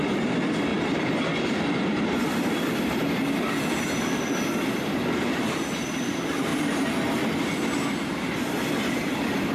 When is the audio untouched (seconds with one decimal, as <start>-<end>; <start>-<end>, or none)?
6.5-8.0